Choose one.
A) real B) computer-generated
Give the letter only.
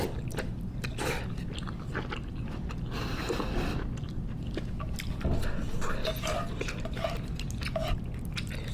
A